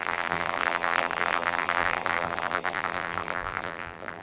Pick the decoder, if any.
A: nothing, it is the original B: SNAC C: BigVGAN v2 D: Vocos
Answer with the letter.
C